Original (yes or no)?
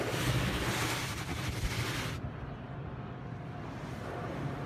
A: no